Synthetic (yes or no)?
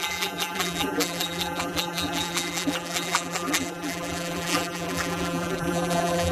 yes